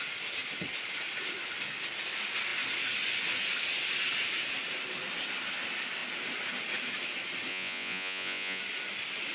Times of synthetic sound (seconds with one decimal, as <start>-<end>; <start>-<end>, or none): 7.5-8.6